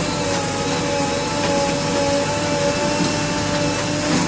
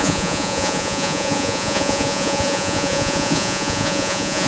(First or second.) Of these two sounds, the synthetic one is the second